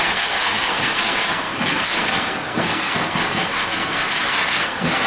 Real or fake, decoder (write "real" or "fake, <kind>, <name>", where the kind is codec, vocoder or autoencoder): fake, codec, SNAC